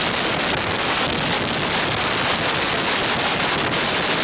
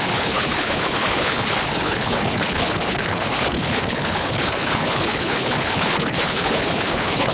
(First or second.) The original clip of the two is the first